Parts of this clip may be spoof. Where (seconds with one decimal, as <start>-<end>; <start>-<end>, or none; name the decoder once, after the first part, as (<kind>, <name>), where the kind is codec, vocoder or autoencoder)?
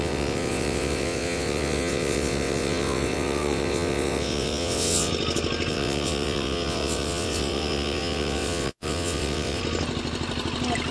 0.0-5.1 (vocoder, WaveNeXt); 5.7-9.6